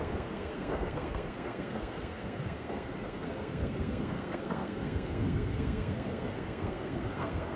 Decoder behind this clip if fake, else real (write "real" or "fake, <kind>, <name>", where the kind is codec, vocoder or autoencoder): fake, codec, SNAC